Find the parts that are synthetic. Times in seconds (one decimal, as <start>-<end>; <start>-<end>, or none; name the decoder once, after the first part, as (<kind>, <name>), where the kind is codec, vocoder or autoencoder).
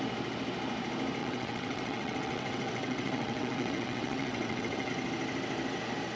1.2-4.9 (vocoder, WaveNeXt)